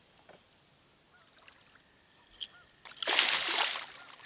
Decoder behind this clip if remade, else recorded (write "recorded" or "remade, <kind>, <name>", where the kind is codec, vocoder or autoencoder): recorded